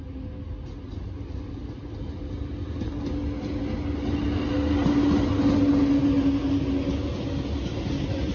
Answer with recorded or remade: recorded